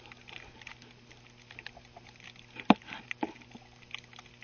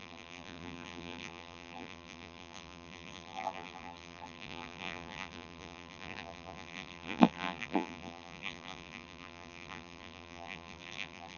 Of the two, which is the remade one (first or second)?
second